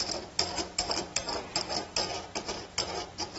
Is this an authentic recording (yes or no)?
yes